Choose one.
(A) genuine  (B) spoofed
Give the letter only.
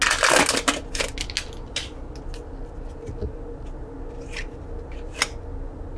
A